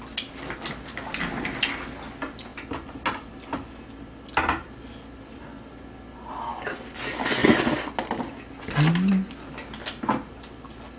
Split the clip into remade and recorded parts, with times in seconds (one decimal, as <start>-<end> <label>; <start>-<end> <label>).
0.0-11.0 recorded